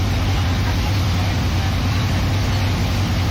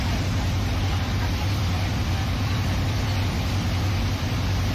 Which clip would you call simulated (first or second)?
second